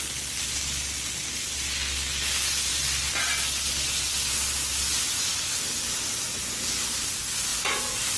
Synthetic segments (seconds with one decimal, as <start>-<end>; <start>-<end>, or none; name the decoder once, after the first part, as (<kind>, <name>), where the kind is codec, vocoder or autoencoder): 2.7-3.2 (vocoder, BigVGAN v2); 7.5-8.2